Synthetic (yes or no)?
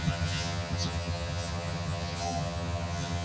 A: yes